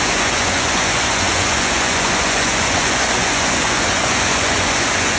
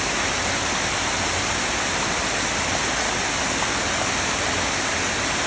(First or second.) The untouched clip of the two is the second